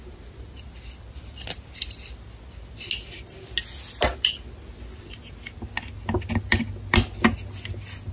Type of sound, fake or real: real